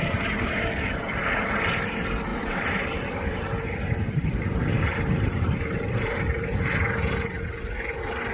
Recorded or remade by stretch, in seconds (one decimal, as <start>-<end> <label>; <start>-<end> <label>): 0.0-2.3 recorded; 2.3-6.2 remade; 6.2-8.3 recorded